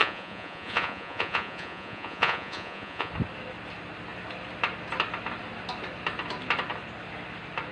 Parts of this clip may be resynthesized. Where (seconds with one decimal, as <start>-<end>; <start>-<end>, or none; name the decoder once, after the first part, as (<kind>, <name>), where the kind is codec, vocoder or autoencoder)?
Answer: 0.0-3.1 (vocoder, Vocos)